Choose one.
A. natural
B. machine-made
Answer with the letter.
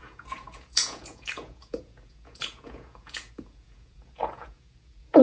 B